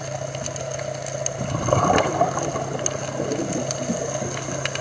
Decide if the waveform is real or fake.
real